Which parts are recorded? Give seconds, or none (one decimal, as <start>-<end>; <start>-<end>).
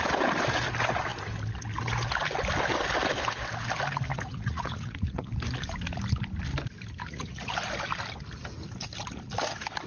0.0-4.1; 5.3-7.0; 7.5-9.9